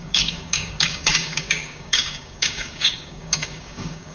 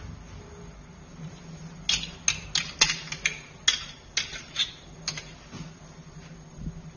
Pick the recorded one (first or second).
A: second